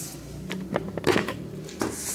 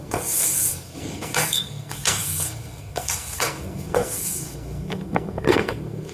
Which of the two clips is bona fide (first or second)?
first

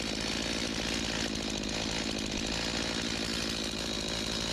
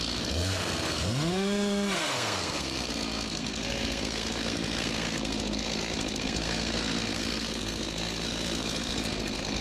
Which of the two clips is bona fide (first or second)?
first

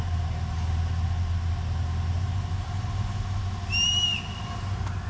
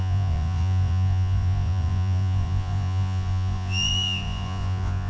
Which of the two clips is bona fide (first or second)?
first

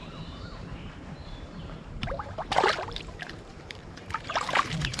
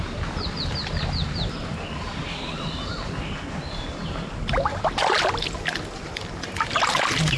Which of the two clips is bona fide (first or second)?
second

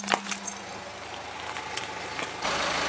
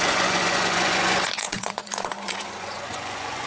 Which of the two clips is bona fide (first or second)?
first